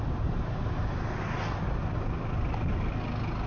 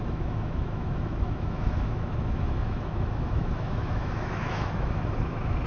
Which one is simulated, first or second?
second